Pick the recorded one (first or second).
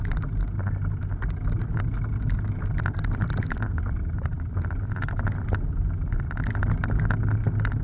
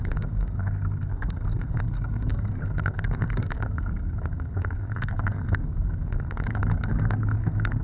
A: first